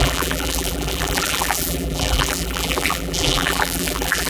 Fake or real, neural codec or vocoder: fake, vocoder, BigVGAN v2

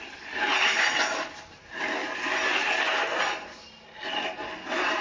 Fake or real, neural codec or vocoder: real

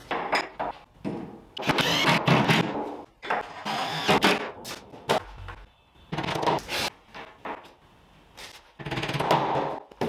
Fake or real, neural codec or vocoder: real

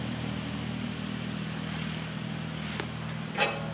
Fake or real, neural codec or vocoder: real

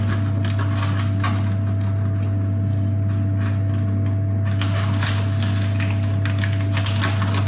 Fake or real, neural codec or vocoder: real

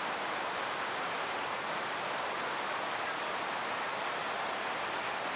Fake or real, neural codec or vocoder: real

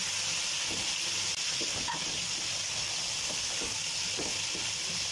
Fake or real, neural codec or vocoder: fake, vocoder, BigVGAN v2